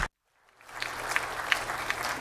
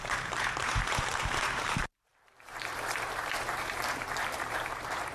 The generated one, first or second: second